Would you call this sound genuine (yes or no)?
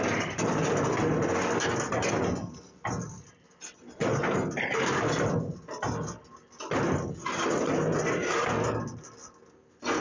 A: yes